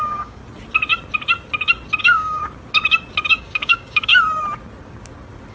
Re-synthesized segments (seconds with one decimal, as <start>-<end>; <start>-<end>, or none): 0.0-0.4; 2.0-2.4; 3.3-4.1